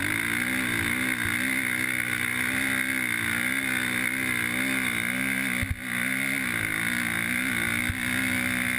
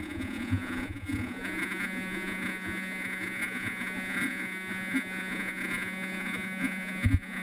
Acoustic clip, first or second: first